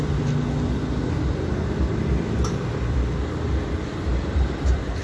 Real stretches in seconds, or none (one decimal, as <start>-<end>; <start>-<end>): 0.0-4.1